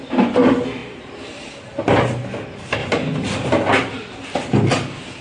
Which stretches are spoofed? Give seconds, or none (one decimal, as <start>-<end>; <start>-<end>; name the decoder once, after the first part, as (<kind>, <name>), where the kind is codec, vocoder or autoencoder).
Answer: 0.8-1.5 (vocoder, BigVGAN v2)